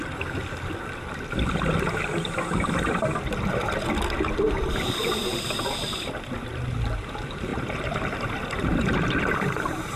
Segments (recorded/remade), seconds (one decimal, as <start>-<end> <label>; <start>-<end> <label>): 0.0-5.3 remade; 5.3-6.9 recorded; 6.9-10.0 remade